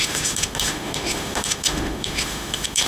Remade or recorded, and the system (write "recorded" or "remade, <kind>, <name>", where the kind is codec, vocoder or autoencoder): remade, autoencoder, DAC-VAE